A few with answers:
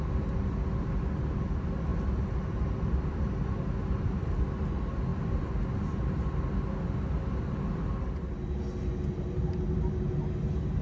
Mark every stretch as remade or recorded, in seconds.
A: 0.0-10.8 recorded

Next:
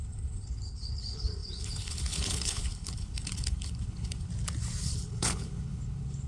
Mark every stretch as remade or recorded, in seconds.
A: 0.0-4.3 remade; 4.3-4.8 recorded; 4.8-6.3 remade

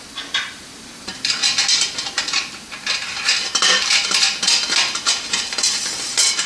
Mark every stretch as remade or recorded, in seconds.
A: 0.0-1.4 remade; 1.4-2.1 recorded; 2.1-6.5 remade

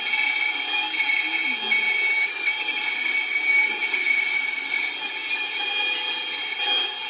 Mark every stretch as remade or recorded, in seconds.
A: 0.0-7.1 recorded

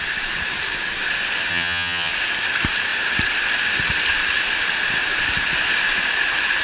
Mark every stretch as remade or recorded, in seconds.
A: 0.0-1.5 recorded; 1.5-2.1 remade; 2.1-6.6 recorded

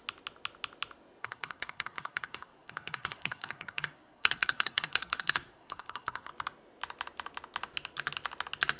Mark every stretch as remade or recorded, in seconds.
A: 0.0-1.2 recorded; 1.2-6.3 remade; 6.3-8.8 recorded